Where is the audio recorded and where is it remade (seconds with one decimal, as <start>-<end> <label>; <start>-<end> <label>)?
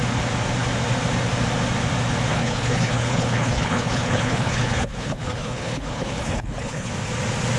0.0-2.3 recorded; 2.3-6.9 remade; 6.9-7.6 recorded